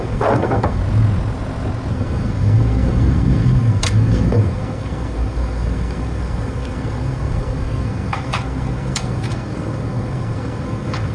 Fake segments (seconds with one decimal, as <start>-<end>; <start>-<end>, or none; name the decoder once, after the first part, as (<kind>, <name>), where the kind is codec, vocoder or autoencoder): 0.0-0.8 (codec, SNAC); 1.9-11.1